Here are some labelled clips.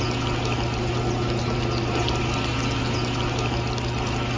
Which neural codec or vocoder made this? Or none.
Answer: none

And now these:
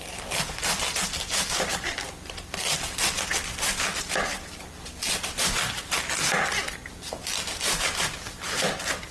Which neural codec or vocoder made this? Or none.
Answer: none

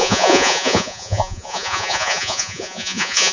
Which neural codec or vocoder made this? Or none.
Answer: vocoder, Vocos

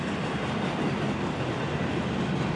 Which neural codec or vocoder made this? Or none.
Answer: none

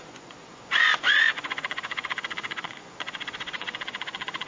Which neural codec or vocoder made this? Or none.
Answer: vocoder, Vocos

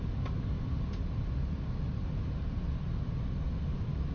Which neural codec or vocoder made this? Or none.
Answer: none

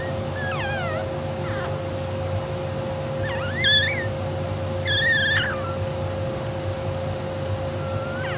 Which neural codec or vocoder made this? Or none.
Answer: none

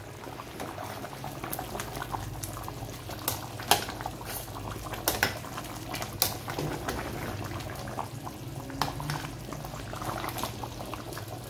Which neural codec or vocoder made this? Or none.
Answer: none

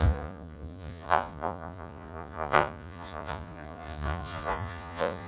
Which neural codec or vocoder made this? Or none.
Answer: vocoder, Vocos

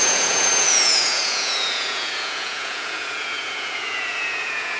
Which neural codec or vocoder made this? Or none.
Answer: vocoder, Vocos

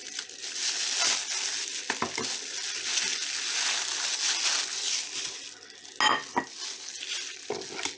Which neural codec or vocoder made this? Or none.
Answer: none